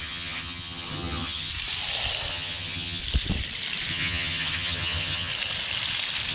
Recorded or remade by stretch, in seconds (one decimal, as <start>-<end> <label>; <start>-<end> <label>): 0.0-1.5 remade; 1.5-2.3 recorded; 2.3-3.0 remade; 3.0-3.9 recorded; 3.9-5.3 remade; 5.3-6.3 recorded